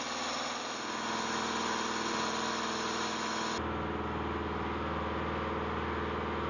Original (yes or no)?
yes